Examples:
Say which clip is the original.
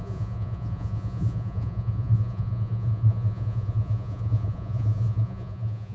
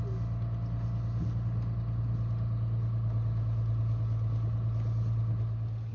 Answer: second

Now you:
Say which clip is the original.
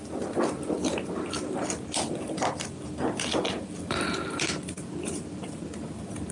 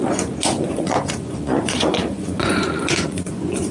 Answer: first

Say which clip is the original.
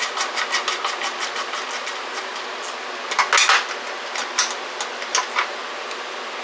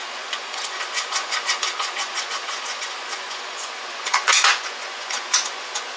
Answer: first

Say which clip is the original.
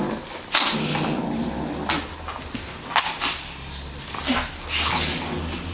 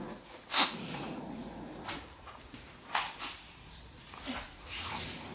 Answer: first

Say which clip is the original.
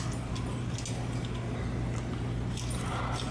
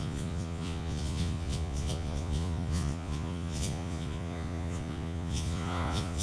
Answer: first